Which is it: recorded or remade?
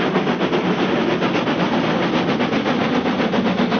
recorded